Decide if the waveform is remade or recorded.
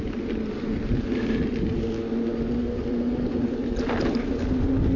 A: recorded